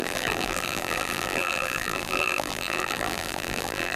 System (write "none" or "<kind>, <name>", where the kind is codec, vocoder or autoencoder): vocoder, BigVGAN v2